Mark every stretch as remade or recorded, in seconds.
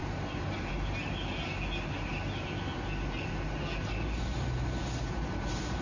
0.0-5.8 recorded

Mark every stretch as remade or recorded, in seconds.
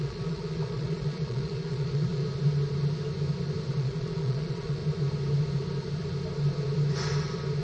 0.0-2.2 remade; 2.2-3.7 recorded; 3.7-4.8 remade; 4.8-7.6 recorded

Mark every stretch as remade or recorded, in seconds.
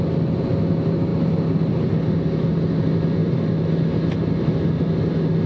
0.0-5.5 recorded